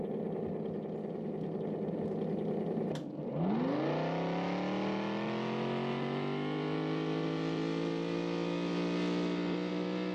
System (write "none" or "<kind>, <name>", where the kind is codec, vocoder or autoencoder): none